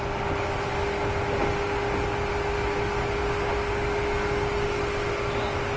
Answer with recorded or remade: recorded